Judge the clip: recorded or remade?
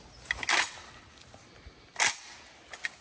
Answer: recorded